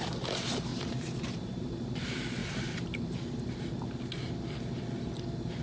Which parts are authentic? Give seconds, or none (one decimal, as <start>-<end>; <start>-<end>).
0.0-0.7; 1.7-2.4; 3.7-5.6